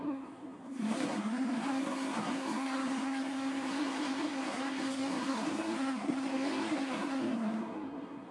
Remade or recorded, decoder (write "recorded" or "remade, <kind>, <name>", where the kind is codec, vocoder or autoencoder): remade, codec, SNAC